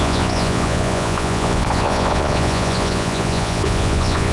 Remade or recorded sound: remade